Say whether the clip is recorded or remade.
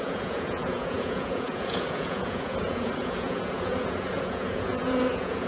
remade